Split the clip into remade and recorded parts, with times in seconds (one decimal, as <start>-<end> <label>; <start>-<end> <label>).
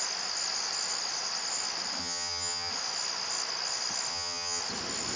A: 0.0-2.0 recorded; 2.0-2.7 remade; 2.7-4.1 recorded; 4.1-4.6 remade; 4.6-5.2 recorded